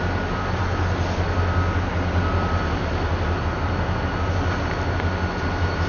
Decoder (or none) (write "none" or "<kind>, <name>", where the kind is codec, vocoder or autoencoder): none